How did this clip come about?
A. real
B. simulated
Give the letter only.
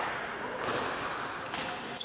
A